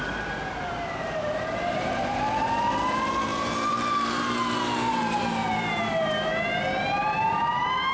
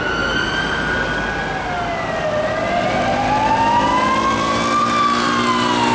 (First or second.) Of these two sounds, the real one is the second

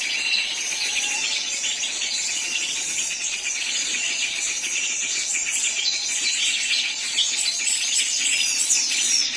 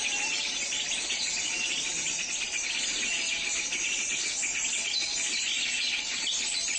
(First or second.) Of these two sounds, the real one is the second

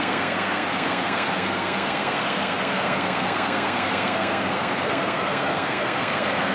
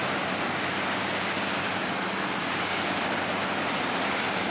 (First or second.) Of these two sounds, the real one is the second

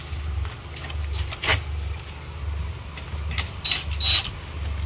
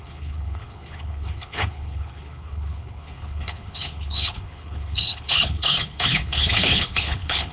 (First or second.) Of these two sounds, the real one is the first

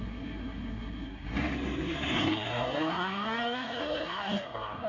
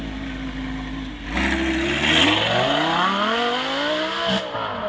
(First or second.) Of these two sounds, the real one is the second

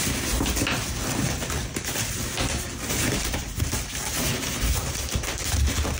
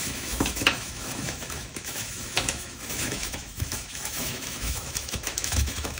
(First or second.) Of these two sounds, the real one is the first